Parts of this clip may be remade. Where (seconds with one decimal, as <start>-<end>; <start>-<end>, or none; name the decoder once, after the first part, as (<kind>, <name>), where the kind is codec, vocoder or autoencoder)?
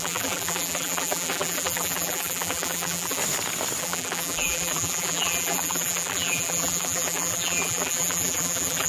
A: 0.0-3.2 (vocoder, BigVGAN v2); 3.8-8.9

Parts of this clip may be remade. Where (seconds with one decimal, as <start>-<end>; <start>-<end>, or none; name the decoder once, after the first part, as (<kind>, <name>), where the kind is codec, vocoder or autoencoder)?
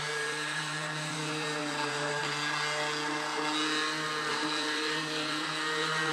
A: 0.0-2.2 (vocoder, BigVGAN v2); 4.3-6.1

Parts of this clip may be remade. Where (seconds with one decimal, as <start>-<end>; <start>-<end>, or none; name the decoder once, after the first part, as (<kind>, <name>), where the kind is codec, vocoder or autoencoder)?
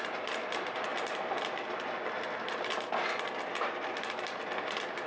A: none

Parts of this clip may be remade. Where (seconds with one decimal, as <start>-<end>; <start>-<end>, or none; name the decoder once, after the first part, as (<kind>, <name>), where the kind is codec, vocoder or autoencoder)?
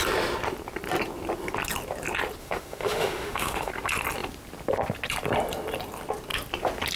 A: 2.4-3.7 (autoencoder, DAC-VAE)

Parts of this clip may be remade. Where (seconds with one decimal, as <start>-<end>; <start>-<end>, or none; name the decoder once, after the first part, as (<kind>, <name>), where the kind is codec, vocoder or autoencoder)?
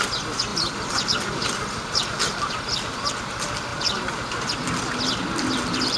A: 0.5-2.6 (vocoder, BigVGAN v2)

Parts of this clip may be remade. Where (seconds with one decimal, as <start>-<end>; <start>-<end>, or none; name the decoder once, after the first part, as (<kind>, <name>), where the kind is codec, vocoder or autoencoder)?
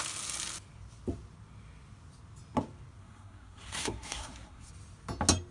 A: 3.0-4.7 (codec, SNAC)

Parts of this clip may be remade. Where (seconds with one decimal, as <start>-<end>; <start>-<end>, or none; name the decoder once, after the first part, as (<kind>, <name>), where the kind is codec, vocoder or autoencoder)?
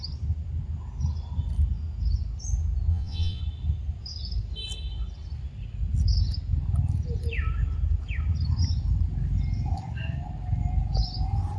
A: 2.9-3.4 (vocoder, Vocos)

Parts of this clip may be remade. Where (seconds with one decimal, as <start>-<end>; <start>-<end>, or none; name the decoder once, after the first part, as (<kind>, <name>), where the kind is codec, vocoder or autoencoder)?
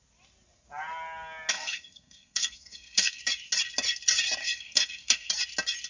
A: 1.5-3.2 (codec, SNAC); 4.4-5.3